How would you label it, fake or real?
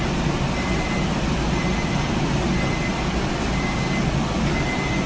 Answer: real